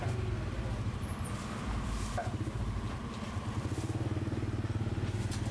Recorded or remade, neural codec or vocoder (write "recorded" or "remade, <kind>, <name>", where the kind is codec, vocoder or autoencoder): recorded